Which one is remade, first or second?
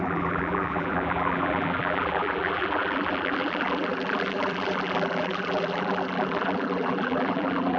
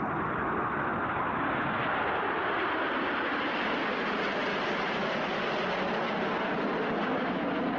first